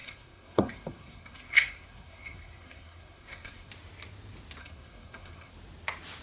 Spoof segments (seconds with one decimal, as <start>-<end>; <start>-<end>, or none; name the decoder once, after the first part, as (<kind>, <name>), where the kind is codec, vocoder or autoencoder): 0.0-3.7 (codec, SNAC); 4.6-5.5